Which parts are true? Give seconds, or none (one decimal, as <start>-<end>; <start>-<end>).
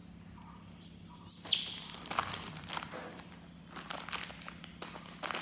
3.2-5.4